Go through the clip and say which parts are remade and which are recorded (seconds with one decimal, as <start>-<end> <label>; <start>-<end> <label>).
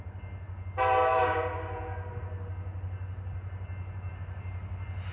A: 0.0-5.1 recorded